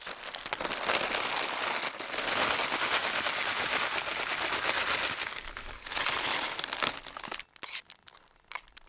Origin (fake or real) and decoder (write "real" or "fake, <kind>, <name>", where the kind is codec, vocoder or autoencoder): real